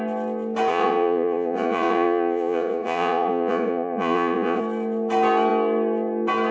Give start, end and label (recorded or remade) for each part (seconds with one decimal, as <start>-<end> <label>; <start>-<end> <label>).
0.0-0.7 recorded; 0.7-4.6 remade; 4.6-6.5 recorded